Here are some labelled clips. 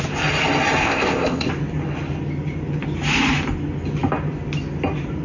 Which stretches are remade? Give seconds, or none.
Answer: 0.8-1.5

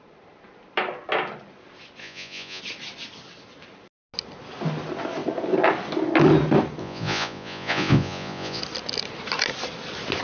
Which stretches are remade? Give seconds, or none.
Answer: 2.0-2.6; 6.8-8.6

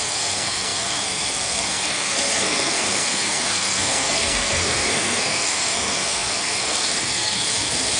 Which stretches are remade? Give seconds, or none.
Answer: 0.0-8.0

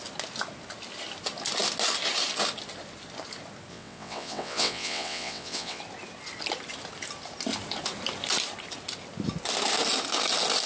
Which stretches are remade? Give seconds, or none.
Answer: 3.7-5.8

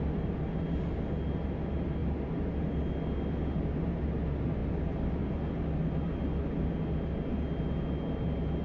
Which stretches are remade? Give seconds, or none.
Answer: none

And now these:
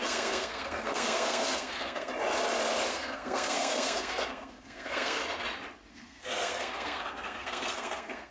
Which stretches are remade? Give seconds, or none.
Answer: 0.0-2.1; 2.9-5.2; 5.9-8.3